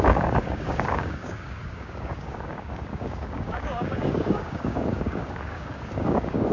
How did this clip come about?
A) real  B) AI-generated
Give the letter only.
B